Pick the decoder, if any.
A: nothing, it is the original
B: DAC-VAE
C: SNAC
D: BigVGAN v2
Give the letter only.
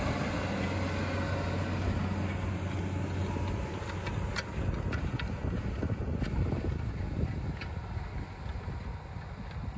A